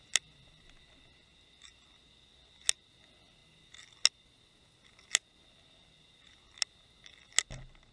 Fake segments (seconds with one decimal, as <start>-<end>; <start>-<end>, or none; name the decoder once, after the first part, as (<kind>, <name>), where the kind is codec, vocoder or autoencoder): none